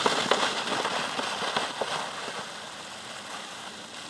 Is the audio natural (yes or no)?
yes